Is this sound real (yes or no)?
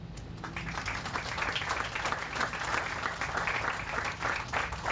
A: yes